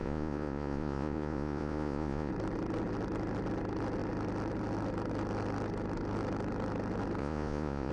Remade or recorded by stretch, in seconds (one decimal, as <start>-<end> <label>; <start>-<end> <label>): 0.0-2.3 remade; 2.3-7.2 recorded; 7.2-7.9 remade